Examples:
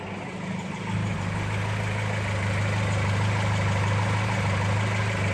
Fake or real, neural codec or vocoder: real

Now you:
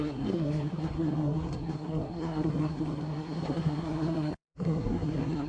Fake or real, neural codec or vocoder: fake, codec, SNAC